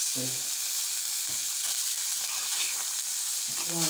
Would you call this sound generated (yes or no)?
no